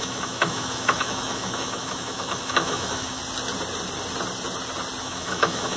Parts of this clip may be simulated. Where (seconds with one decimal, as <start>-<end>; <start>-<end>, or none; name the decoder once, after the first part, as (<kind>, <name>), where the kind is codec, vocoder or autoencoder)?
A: 0.0-3.2 (autoencoder, DAC-VAE); 5.0-5.8